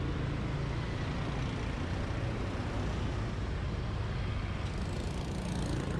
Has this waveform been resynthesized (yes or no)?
no